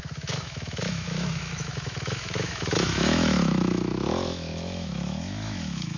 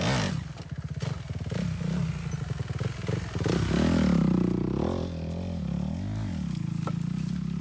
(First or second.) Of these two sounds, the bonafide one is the second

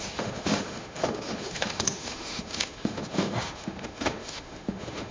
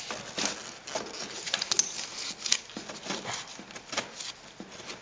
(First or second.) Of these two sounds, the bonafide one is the second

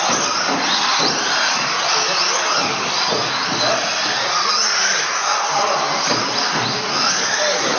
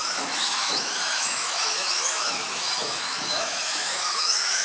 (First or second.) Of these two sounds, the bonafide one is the first